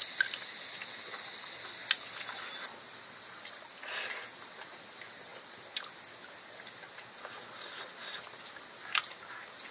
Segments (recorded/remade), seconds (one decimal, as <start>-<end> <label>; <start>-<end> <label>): 0.0-9.7 recorded